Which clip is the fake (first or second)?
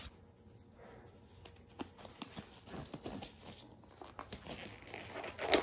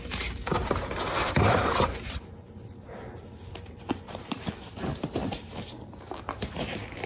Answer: second